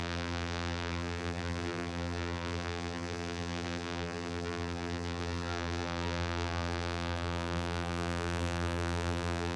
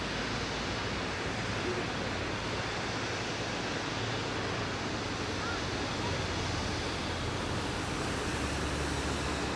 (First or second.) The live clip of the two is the second